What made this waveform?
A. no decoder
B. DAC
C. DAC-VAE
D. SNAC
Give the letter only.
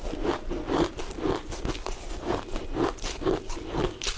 A